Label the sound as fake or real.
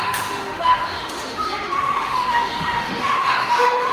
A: fake